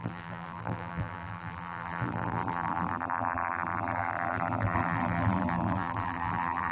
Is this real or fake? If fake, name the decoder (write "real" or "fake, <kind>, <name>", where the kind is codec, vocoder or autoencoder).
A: fake, vocoder, BigVGAN v2